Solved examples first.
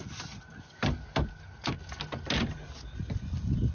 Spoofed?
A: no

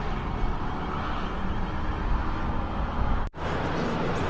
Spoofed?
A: no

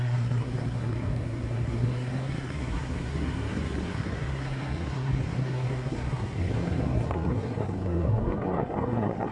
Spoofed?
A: yes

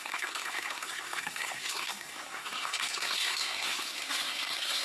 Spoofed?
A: yes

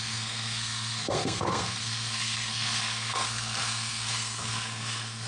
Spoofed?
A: yes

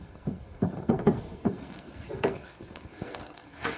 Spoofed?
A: yes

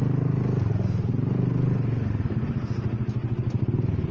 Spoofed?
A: no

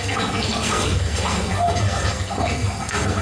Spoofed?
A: yes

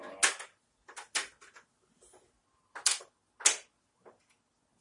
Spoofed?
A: no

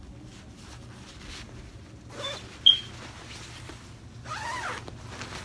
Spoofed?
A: no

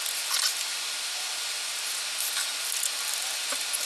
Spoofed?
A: no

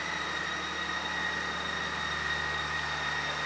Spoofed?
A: no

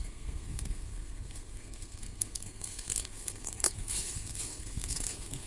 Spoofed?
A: yes